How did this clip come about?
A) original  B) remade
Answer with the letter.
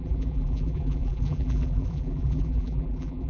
B